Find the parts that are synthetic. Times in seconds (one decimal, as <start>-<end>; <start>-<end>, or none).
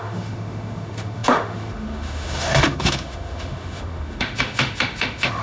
0.0-5.4